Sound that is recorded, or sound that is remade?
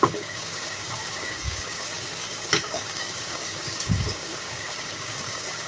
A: remade